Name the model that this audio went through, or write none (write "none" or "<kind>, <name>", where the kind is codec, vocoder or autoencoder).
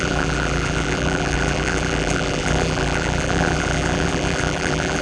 vocoder, BigVGAN v2